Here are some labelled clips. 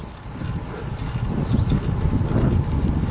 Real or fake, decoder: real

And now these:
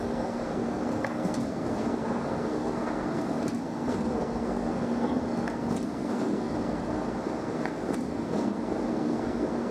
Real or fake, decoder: fake, codec, SNAC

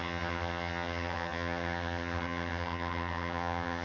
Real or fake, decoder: fake, vocoder, HiFi-GAN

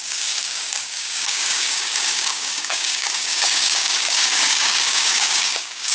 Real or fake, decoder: fake, codec, DAC